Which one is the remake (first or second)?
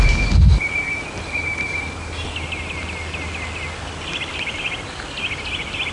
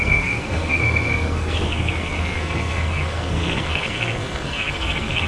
second